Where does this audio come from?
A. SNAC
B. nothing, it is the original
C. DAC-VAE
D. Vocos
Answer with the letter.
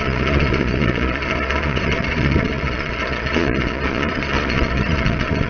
D